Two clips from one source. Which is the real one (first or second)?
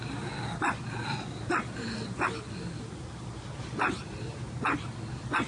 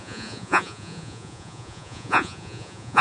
first